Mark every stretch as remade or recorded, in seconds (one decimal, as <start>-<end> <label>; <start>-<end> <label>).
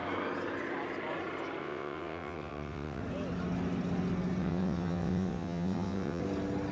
0.0-1.6 recorded; 1.6-3.0 remade; 3.0-4.4 recorded; 4.4-6.2 remade; 6.2-6.7 recorded